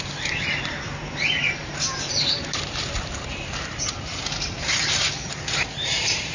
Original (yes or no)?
no